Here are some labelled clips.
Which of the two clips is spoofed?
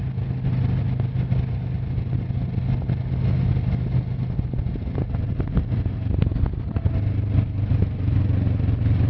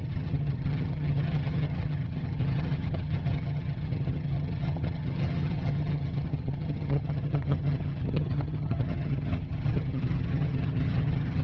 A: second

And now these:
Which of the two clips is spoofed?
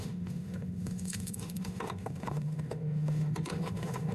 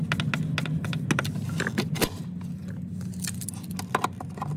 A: first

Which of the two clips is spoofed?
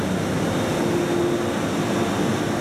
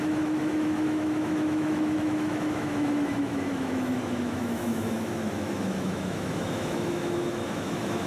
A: second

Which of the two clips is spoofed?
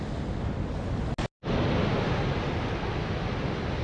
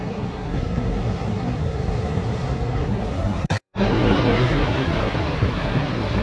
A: second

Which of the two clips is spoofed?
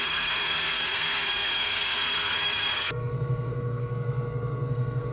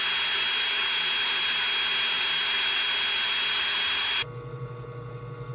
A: first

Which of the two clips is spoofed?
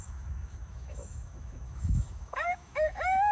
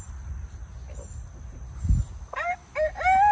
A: first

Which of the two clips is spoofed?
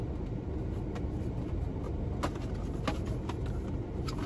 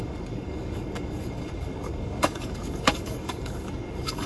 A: second